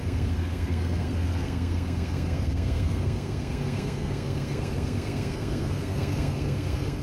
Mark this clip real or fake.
fake